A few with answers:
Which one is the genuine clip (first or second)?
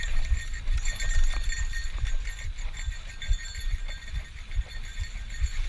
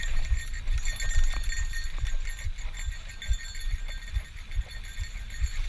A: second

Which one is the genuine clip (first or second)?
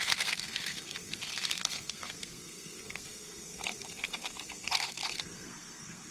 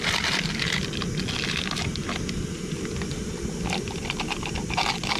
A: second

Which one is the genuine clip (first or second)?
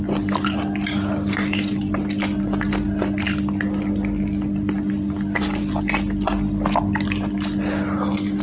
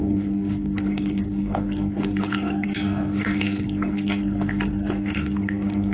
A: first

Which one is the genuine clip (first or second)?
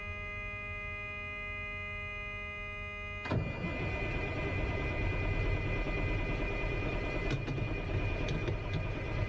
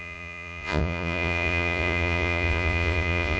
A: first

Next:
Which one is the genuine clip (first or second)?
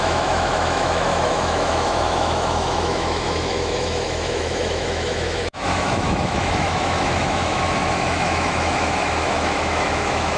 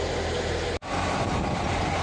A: second